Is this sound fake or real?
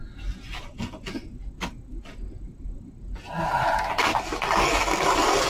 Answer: real